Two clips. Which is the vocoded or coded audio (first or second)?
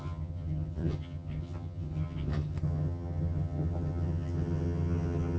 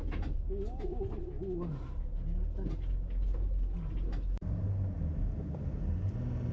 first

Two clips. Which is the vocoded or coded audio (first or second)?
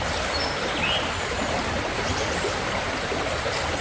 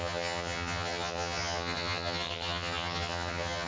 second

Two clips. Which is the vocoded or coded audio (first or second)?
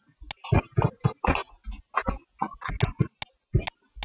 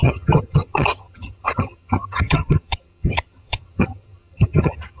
second